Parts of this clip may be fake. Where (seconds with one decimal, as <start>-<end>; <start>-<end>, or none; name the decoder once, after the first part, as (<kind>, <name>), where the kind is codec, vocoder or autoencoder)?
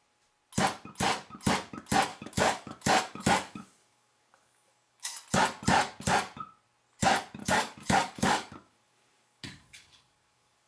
2.1-5.1 (codec, DAC); 7.4-10.7